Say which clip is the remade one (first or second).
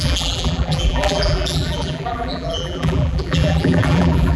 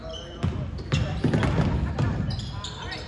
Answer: first